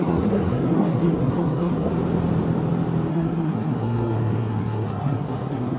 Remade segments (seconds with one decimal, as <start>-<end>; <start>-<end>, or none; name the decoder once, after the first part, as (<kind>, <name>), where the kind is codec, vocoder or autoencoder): 0.0-1.9 (codec, SNAC); 3.1-5.8